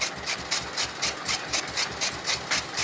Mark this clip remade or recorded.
recorded